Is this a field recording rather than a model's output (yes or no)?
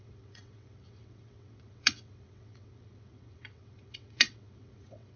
no